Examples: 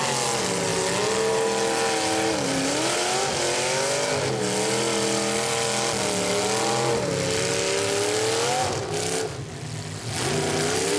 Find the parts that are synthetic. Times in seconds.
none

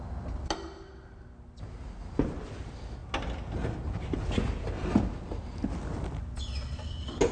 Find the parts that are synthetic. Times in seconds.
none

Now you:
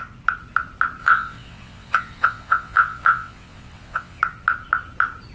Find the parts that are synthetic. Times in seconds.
1.0-4.2

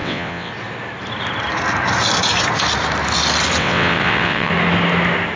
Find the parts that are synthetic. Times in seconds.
0.0-0.5; 3.6-4.5

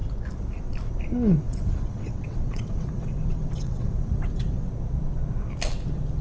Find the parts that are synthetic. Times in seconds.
1.5-4.7

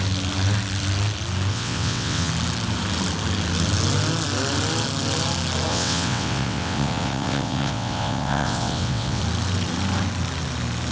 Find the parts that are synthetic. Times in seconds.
1.5-2.3; 5.7-9.2

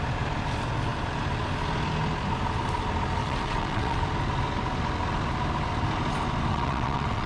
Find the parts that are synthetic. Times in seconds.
3.2-4.0; 6.5-7.3